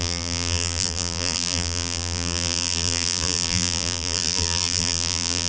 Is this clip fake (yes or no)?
yes